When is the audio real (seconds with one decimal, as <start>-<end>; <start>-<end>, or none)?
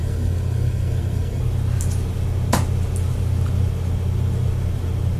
1.4-5.2